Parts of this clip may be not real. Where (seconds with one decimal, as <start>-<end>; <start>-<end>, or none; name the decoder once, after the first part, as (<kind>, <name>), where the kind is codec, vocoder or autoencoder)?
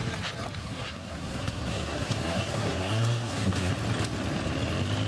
0.6-3.7 (codec, SNAC)